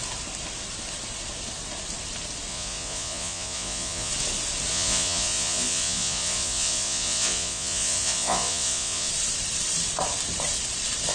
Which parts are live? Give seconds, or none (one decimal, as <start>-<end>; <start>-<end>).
0.0-2.5; 4.1-4.7; 9.1-11.1

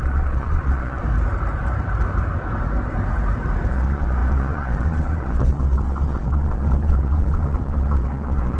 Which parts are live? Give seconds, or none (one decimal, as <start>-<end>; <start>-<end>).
1.0-3.7